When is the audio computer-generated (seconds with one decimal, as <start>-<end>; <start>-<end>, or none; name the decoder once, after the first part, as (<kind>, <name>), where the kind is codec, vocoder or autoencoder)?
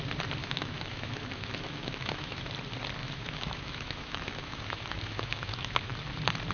0.4-2.4 (autoencoder, DAC-VAE); 3.0-6.0